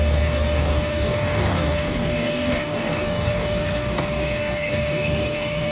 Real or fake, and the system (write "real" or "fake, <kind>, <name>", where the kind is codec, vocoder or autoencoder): fake, codec, DAC